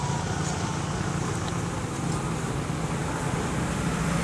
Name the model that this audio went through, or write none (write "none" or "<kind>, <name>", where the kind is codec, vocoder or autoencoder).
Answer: none